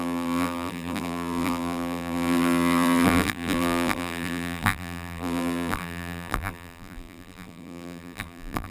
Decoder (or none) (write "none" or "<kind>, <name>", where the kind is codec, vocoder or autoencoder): vocoder, BigVGAN v2